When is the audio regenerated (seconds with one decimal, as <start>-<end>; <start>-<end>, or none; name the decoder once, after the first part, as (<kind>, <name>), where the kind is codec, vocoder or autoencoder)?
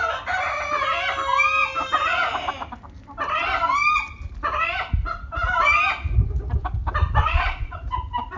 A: 7.2-7.8 (vocoder, Vocos)